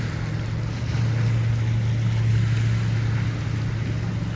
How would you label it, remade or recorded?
recorded